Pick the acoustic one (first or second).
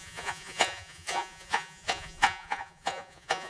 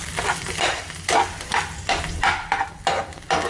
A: second